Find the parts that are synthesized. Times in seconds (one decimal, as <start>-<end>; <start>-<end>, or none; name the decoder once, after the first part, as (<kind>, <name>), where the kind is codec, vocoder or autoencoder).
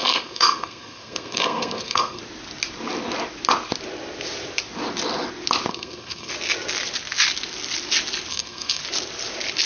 0.0-2.2 (codec, SNAC); 5.7-6.3; 8.3-8.8